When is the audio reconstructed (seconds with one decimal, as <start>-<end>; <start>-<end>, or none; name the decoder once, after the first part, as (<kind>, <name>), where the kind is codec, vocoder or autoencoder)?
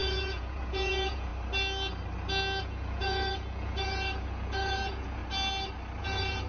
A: 0.0-1.3 (vocoder, Vocos); 2.6-5.2; 6.0-6.5